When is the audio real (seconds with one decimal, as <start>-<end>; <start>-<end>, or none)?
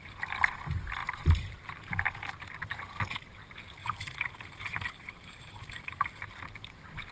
0.0-3.8; 6.2-7.1